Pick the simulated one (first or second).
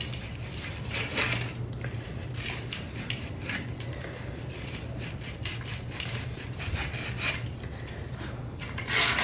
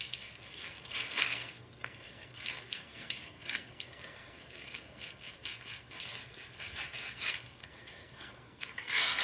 second